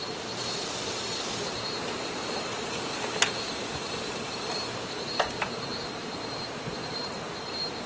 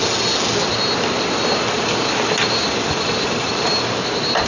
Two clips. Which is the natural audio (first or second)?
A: second